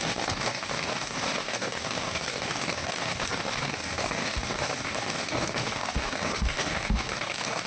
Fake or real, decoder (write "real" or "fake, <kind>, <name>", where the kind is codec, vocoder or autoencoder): fake, codec, DAC